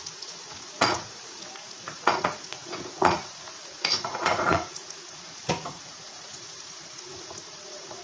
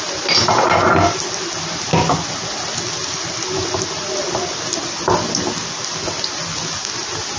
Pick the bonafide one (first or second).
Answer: second